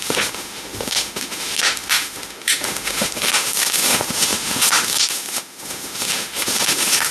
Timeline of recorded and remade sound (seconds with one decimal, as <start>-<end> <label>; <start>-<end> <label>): 0.0-7.1 remade